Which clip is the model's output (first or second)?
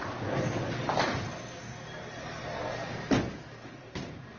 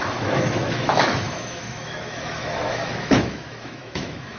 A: second